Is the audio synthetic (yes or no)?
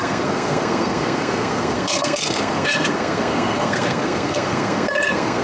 yes